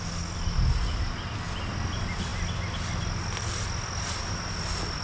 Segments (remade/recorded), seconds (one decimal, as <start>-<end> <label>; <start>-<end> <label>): 0.0-5.0 recorded